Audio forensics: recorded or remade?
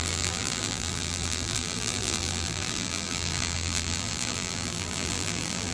remade